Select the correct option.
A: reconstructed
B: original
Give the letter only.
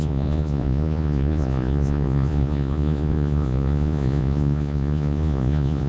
A